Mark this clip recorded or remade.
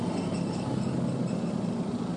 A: recorded